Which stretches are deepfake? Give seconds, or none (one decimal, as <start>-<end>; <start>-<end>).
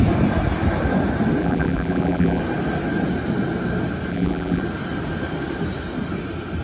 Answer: 1.4-2.4; 4.1-4.6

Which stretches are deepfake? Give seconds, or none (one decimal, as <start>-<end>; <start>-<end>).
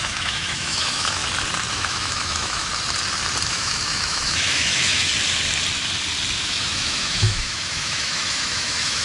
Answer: 0.0-1.2; 1.7-2.7; 3.5-5.1; 6.4-9.0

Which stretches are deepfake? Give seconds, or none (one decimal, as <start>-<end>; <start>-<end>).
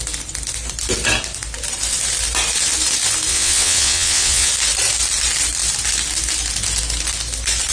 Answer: 3.3-4.5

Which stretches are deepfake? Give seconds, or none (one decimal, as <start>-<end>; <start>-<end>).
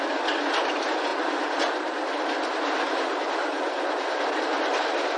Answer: none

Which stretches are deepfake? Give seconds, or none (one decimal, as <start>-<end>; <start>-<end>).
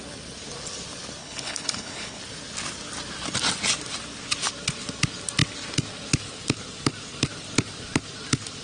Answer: 1.2-2.2